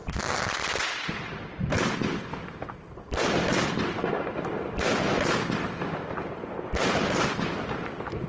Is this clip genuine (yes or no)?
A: yes